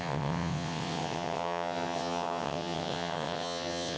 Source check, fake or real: fake